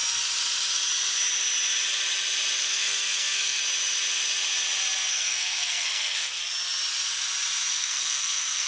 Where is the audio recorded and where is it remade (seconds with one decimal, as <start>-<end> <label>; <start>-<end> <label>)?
0.0-2.6 recorded; 2.6-3.6 remade; 3.6-5.1 recorded; 5.1-6.4 remade; 6.4-7.7 recorded; 7.7-8.7 remade